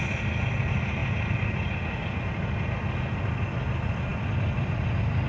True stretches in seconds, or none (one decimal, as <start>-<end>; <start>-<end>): 0.0-5.3